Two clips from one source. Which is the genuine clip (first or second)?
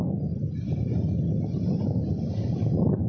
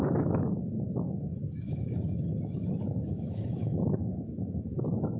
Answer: first